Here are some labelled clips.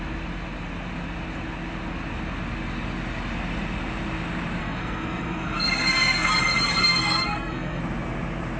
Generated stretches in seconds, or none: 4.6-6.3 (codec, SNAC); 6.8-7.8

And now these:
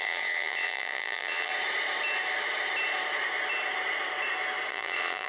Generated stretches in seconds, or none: 0.0-1.5 (vocoder, Vocos); 4.7-5.3

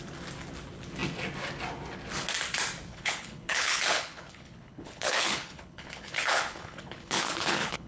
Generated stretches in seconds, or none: 2.9-7.9 (codec, HILCodec)

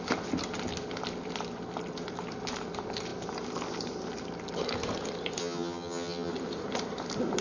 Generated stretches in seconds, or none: 5.4-6.3 (vocoder, HiFi-GAN)

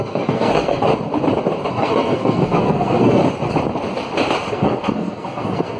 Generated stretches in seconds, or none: 0.0-0.9 (codec, SNAC); 1.7-3.2; 4.5-5.8

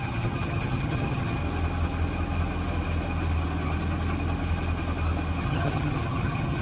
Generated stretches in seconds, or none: 0.0-1.4 (vocoder, HiFi-GAN); 5.4-6.6

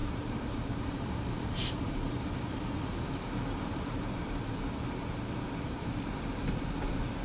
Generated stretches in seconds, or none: 0.0-4.3 (vocoder, BigVGAN v2)

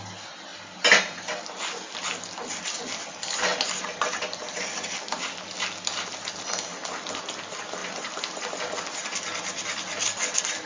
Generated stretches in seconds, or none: 0.5-1.6 (vocoder, BigVGAN v2); 3.5-5.2; 7.8-8.5